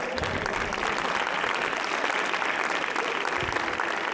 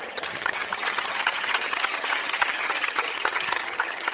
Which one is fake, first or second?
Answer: second